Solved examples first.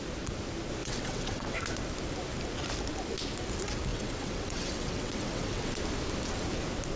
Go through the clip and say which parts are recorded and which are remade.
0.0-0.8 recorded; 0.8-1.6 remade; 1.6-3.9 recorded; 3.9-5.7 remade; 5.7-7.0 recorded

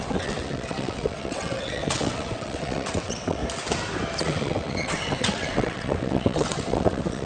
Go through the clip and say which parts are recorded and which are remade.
0.0-3.4 remade; 3.4-4.2 recorded; 4.2-7.3 remade

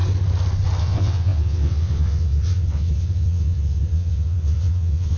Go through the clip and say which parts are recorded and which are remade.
0.0-0.8 recorded; 0.8-5.2 remade

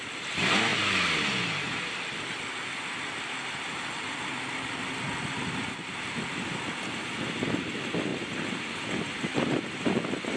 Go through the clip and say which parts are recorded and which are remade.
0.0-10.4 recorded

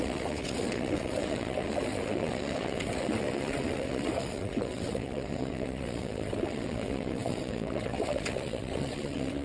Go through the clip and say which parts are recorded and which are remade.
0.0-9.4 remade

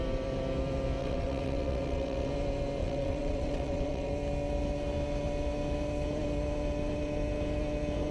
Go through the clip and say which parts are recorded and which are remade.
0.0-1.0 recorded; 1.0-2.3 remade; 2.3-2.8 recorded; 2.8-4.1 remade; 4.1-8.1 recorded

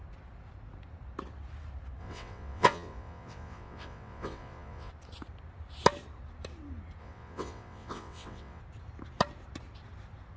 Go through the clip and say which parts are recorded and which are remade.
0.0-2.0 recorded; 2.0-4.9 remade; 4.9-7.0 recorded; 7.0-8.6 remade; 8.6-10.4 recorded